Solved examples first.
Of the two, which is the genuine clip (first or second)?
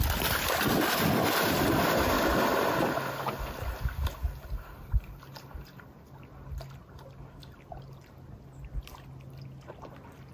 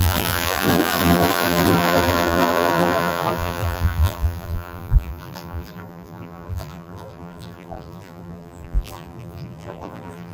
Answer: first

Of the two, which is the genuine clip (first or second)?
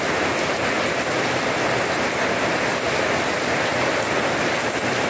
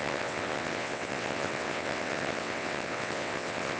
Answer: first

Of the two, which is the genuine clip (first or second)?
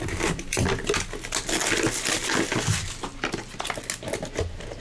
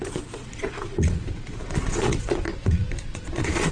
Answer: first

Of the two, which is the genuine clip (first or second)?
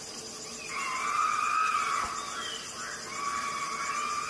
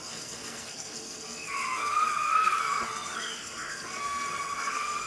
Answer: first